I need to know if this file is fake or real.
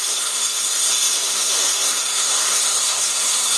fake